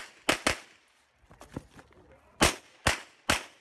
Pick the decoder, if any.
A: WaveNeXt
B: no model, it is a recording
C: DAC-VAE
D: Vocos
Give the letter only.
B